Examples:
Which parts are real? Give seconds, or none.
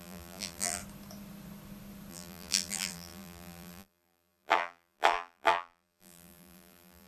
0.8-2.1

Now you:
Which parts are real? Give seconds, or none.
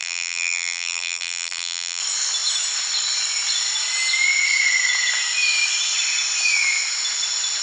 2.0-7.6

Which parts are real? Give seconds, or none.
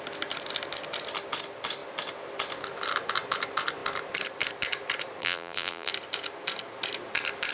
0.0-5.2; 5.9-7.5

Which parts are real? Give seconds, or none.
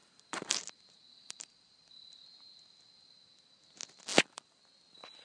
3.1-4.1; 4.7-5.2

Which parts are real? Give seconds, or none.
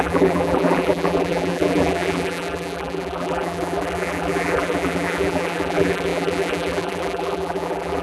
none